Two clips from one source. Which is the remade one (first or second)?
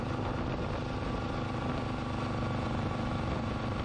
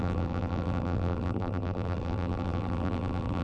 second